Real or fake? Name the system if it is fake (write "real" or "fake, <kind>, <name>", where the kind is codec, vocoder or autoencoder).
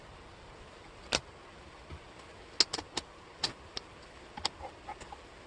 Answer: real